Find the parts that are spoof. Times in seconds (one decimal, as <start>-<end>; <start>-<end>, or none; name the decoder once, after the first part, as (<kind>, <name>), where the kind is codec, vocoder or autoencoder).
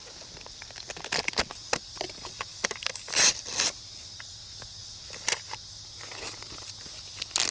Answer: 0.0-0.9 (vocoder, BigVGAN v2)